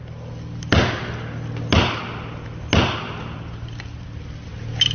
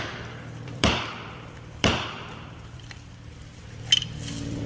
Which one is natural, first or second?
first